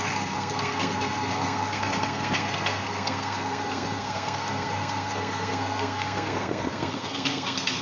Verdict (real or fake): fake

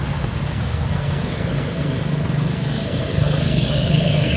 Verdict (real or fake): fake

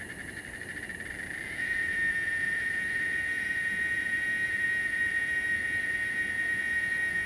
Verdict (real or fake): real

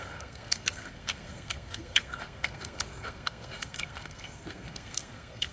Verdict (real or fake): fake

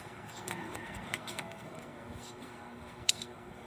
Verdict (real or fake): fake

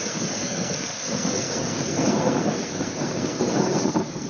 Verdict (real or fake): fake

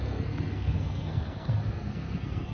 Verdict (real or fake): fake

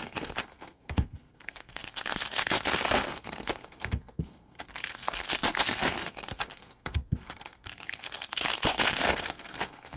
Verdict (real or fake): fake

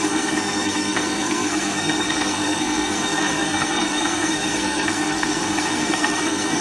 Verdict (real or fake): fake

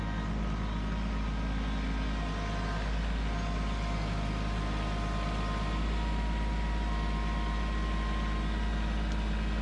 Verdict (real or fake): real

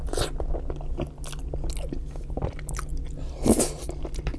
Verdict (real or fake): real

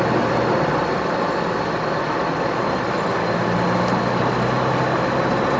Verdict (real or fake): real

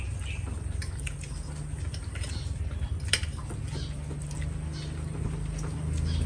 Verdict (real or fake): real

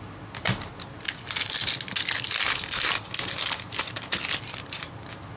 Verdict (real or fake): real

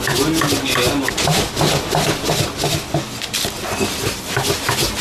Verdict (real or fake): real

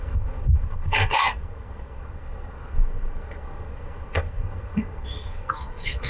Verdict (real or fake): fake